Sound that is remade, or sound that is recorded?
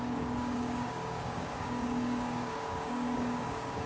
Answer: remade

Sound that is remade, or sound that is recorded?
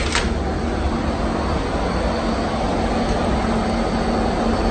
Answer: recorded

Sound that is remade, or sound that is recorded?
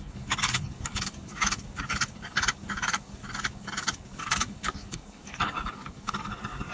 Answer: remade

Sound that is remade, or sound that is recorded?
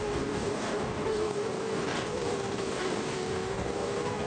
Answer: remade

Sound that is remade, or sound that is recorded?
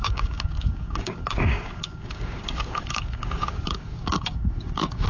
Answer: remade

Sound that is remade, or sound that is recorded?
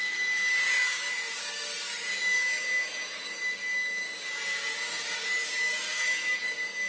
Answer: remade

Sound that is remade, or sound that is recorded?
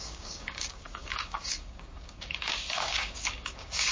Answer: remade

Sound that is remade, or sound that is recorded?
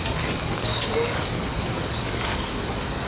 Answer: remade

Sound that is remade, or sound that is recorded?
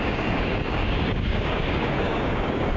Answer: remade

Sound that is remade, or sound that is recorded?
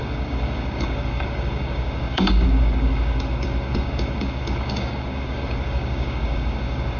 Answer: remade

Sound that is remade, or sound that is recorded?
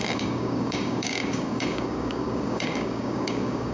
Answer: remade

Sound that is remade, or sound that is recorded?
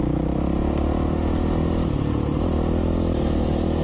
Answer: recorded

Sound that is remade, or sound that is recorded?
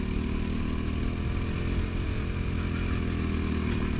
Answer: recorded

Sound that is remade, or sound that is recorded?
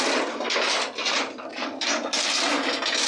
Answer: recorded